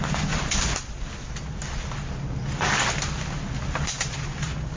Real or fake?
real